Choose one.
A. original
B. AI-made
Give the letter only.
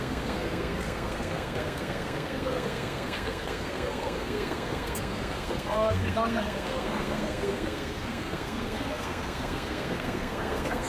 B